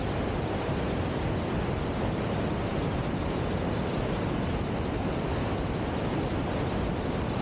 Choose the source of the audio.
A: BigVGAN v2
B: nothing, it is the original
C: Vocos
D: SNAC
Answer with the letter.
B